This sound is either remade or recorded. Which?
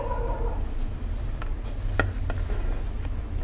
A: recorded